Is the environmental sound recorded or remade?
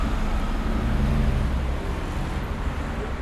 recorded